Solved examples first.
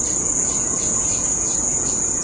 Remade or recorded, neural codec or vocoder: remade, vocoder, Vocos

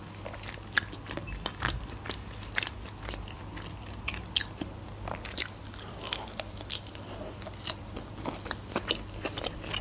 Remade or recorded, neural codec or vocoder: recorded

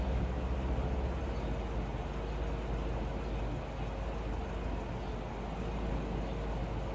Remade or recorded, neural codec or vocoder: recorded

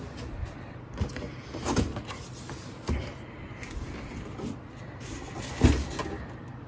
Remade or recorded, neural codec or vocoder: recorded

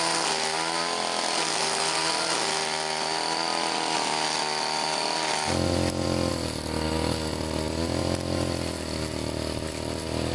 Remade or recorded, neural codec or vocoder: recorded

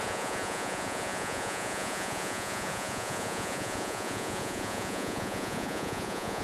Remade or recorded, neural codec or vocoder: remade, vocoder, Vocos